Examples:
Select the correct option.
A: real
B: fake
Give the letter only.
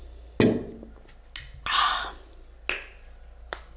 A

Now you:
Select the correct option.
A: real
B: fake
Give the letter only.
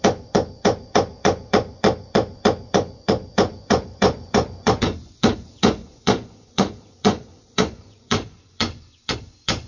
B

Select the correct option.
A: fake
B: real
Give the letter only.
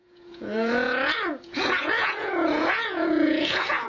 A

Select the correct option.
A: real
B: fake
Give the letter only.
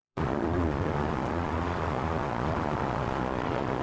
B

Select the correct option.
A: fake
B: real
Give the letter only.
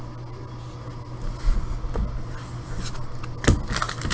B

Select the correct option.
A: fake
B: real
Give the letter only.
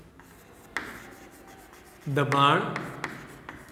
B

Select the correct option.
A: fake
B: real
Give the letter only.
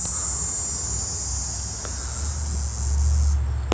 B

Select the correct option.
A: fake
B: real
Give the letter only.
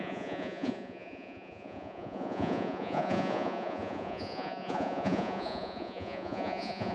A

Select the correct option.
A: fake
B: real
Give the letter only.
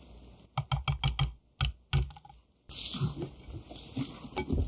B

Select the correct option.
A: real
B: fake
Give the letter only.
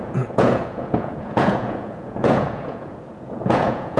B